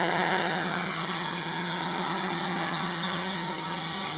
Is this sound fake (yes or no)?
yes